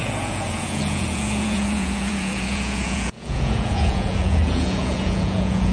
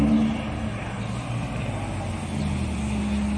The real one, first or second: second